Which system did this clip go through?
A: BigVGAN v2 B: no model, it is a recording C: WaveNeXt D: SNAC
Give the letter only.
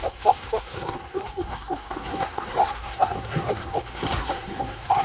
D